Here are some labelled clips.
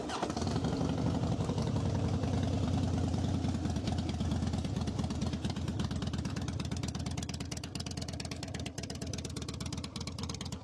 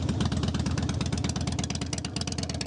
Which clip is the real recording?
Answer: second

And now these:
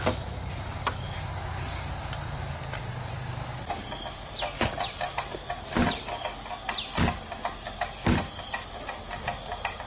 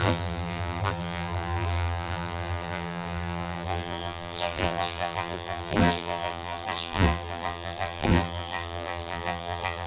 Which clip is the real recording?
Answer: first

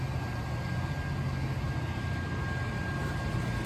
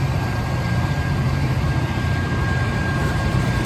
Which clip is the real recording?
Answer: first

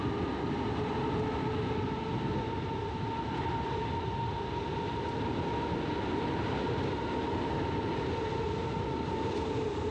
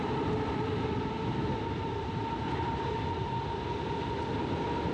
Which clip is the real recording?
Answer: first